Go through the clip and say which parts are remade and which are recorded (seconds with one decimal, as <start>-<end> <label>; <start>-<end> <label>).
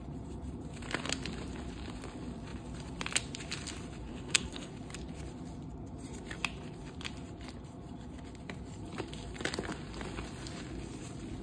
0.0-4.1 recorded; 4.1-4.7 remade; 4.7-11.4 recorded